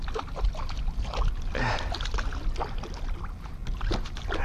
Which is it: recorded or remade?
recorded